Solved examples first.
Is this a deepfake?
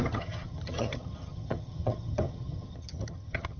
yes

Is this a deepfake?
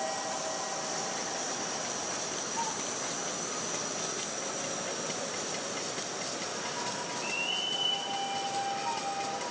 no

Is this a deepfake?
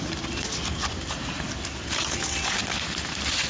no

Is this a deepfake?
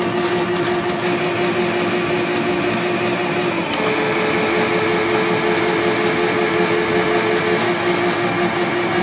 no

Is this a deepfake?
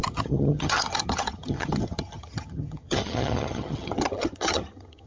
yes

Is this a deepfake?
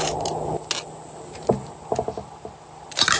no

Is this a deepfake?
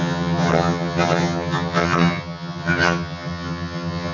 yes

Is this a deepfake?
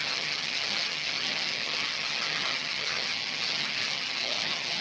yes